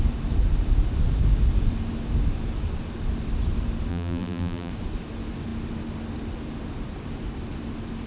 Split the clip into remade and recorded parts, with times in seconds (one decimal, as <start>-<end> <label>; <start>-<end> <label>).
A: 0.0-3.9 recorded; 3.9-4.7 remade; 4.7-8.1 recorded